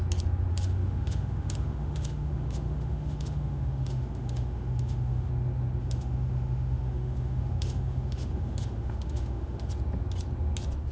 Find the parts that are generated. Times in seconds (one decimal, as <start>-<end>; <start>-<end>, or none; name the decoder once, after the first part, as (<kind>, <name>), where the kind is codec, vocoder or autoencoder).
0.5-5.3 (autoencoder, DAC-VAE); 5.8-9.7